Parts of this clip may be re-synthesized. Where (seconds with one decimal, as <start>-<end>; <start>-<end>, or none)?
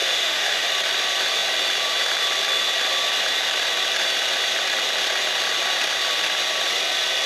0.0-0.7